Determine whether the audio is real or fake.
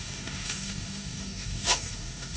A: fake